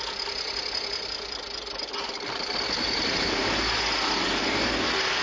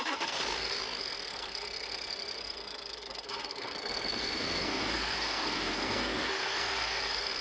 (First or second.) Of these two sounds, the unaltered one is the first